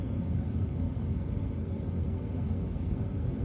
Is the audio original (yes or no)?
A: no